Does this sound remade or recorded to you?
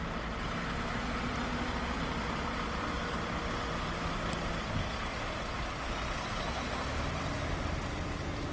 recorded